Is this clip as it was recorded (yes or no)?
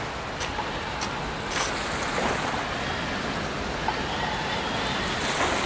yes